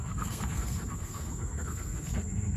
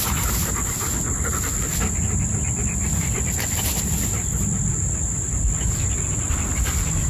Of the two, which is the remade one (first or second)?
first